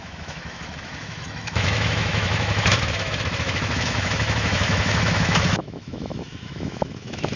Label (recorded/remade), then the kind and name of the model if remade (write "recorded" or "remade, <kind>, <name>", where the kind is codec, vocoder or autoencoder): remade, autoencoder, DAC-VAE